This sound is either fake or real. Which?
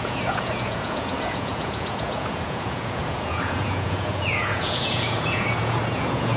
fake